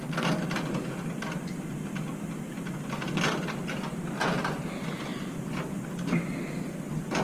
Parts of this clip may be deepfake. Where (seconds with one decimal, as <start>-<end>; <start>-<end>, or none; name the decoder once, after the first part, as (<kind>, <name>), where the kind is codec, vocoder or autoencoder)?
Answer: 5.1-5.8 (vocoder, BigVGAN v2)